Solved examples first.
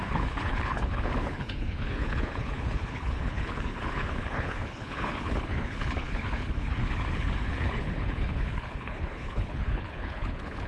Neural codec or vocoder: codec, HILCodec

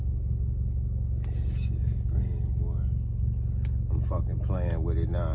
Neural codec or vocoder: none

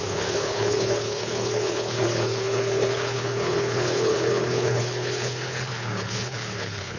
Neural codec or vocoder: codec, HILCodec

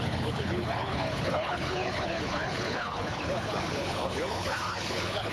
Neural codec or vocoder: codec, HILCodec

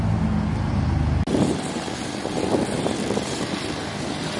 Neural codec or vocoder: none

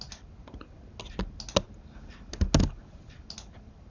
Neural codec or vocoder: none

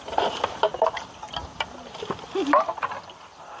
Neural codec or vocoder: none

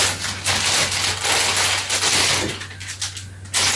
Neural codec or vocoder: none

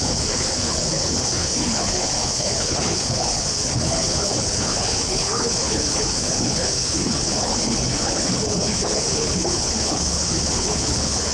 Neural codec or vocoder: codec, HILCodec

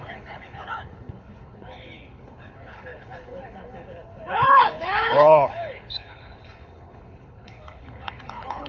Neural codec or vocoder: codec, HILCodec